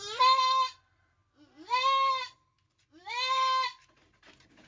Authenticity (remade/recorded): recorded